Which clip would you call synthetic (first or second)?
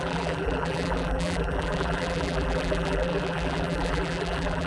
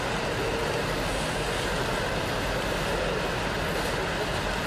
first